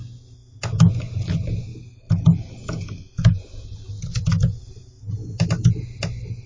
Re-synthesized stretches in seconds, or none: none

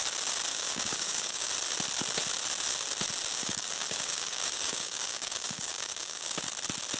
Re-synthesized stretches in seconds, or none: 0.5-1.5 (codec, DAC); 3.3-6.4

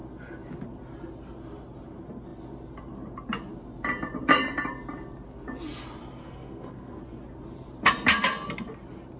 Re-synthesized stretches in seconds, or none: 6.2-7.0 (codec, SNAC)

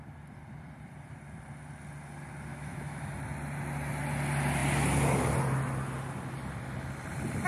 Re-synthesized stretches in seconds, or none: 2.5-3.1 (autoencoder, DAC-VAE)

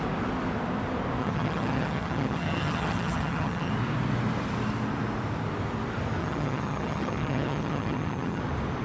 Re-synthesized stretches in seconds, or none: 1.2-3.7 (vocoder, HiFi-GAN); 6.2-8.4

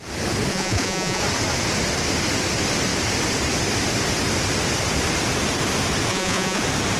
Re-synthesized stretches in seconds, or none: 0.5-1.2 (vocoder, Vocos); 6.1-6.6